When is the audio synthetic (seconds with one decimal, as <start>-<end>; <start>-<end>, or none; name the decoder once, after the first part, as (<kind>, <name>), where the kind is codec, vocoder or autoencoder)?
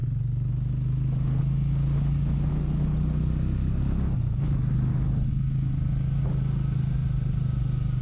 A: 7.0-7.6 (vocoder, BigVGAN v2)